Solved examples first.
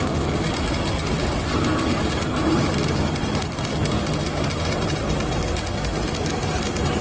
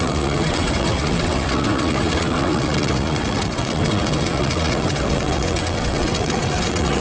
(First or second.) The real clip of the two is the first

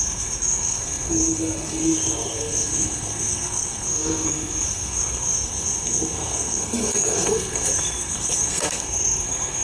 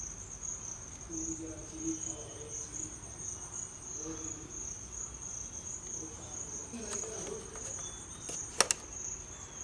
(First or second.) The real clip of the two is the second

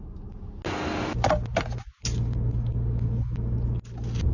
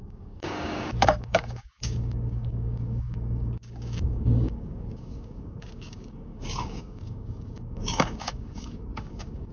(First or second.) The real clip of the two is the first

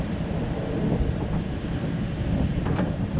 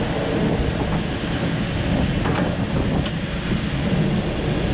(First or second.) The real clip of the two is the second